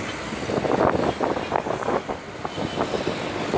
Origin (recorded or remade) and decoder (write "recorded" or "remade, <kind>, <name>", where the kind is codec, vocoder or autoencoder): recorded